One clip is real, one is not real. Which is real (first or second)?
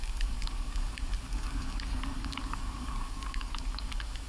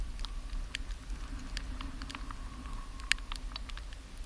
second